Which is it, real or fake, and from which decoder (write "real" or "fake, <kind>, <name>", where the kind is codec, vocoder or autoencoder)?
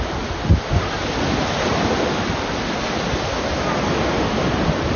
real